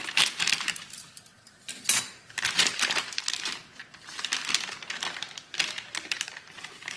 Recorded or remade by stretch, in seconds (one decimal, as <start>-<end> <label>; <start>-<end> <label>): 0.0-1.7 remade; 1.7-2.4 recorded; 2.4-3.8 remade; 3.8-5.6 recorded; 5.6-7.0 remade